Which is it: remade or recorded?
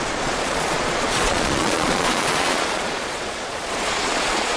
remade